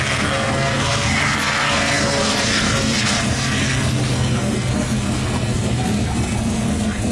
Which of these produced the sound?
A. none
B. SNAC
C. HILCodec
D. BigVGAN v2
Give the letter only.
B